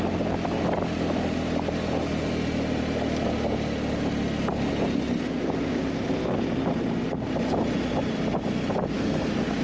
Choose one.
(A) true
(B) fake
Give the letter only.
A